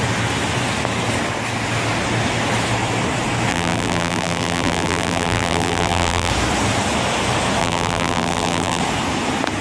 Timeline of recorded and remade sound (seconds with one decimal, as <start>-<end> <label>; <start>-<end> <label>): 0.0-3.5 recorded; 3.5-6.3 remade; 6.3-7.6 recorded; 7.6-8.8 remade; 8.8-9.6 recorded